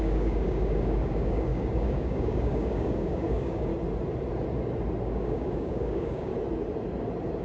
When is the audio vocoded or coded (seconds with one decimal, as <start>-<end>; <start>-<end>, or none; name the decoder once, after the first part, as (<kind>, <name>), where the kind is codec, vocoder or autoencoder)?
0.0-3.7 (codec, DAC); 5.0-6.3